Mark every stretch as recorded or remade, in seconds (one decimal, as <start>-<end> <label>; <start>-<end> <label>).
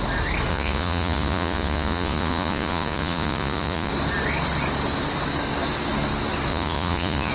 0.0-0.5 recorded; 0.5-3.9 remade; 3.9-6.5 recorded; 6.5-7.3 remade